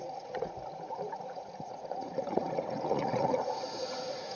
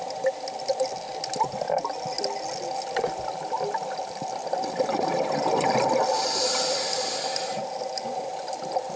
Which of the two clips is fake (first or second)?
first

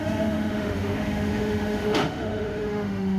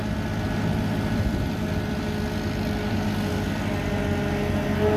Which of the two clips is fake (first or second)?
first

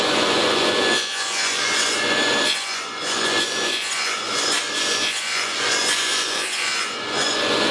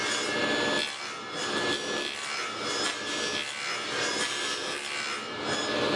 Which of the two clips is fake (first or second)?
first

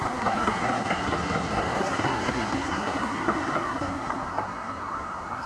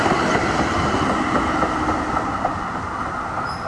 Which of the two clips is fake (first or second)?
first